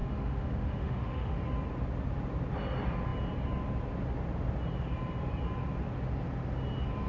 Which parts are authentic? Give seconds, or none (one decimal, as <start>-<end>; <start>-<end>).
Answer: 1.4-7.1

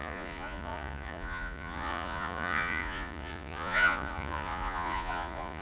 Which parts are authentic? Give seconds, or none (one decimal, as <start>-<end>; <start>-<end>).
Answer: none